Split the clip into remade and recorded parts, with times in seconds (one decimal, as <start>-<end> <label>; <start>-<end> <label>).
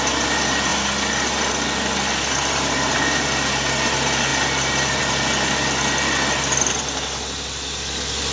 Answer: 0.0-8.3 recorded